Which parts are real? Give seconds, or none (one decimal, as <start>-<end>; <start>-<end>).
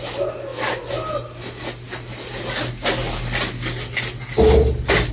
0.0-5.1